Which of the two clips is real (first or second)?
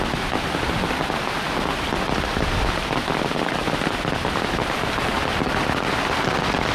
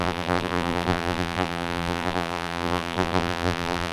first